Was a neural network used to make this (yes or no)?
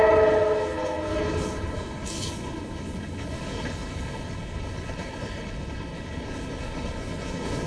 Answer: yes